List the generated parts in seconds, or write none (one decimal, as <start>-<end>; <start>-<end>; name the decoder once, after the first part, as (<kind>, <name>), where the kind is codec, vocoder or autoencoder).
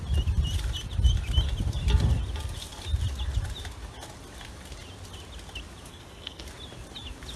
5.9-6.4 (codec, SNAC)